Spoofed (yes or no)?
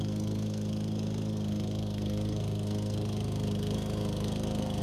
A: yes